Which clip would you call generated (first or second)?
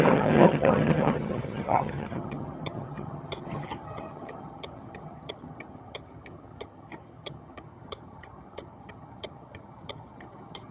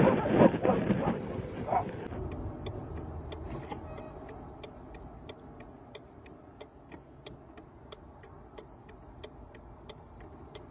first